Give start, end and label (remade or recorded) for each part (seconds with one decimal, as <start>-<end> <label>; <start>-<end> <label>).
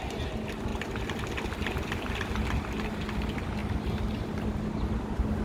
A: 0.0-5.4 recorded